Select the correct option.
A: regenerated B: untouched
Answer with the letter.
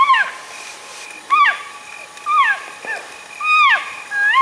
B